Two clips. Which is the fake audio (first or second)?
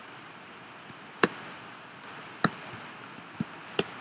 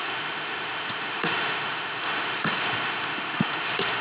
second